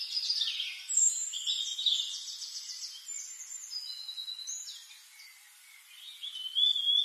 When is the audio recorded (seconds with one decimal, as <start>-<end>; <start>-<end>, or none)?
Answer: 0.0-7.0